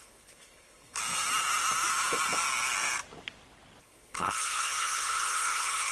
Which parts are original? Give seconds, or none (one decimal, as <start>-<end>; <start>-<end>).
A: 1.0-3.8